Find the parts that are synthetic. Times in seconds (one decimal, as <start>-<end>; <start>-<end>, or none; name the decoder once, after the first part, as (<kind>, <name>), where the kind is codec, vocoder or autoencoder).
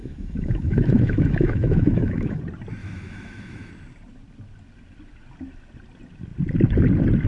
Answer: 0.0-2.4 (autoencoder, DAC-VAE); 2.8-3.7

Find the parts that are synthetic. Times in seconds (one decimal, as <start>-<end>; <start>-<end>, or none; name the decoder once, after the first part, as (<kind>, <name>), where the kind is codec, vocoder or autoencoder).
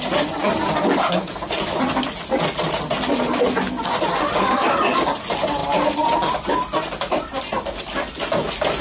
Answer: none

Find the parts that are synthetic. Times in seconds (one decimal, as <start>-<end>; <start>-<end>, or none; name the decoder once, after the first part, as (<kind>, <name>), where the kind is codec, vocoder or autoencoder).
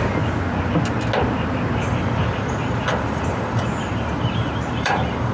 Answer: 1.8-5.3 (vocoder, BigVGAN v2)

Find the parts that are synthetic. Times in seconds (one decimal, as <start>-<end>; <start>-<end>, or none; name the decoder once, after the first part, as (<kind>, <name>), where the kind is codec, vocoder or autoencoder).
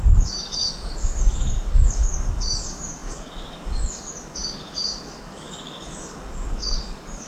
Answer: 0.0-7.3 (codec, DAC)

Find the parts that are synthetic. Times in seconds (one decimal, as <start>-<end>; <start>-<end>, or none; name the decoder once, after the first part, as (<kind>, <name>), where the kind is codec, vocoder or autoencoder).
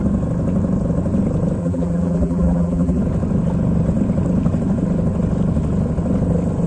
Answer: 1.6-3.0 (vocoder, BigVGAN v2)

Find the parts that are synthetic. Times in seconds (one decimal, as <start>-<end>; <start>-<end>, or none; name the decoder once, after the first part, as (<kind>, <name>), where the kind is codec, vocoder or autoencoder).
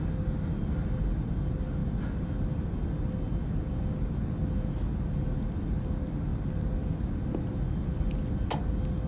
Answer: none